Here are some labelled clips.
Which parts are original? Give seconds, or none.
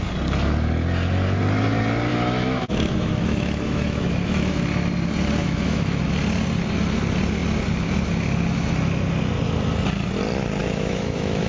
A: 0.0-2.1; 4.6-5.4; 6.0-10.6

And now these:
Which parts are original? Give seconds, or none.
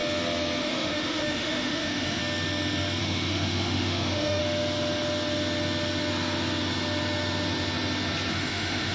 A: 0.0-0.6; 2.2-3.0; 4.4-8.3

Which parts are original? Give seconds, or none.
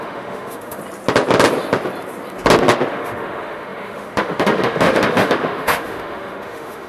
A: 0.8-2.9